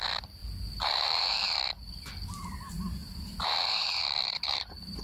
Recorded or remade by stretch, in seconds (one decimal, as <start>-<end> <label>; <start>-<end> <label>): 0.0-0.4 recorded; 0.4-1.6 remade; 1.6-3.0 recorded; 3.0-5.0 remade